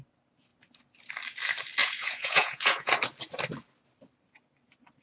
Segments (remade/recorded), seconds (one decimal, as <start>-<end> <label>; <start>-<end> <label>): 0.0-1.8 recorded; 1.8-2.9 remade; 2.9-5.0 recorded